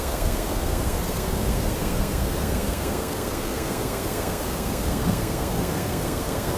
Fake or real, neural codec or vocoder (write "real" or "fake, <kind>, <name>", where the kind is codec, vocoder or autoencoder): fake, codec, SNAC